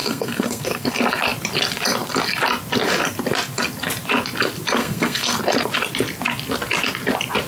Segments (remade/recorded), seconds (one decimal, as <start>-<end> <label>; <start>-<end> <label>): 0.0-0.9 remade; 0.9-4.8 recorded; 4.8-5.4 remade; 5.4-7.5 recorded